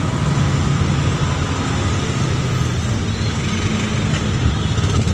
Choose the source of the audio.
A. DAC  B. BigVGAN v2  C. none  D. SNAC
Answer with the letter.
C